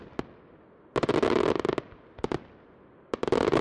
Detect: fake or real real